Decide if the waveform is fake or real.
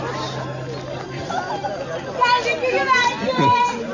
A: real